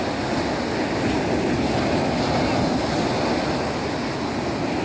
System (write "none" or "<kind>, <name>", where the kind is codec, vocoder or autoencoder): none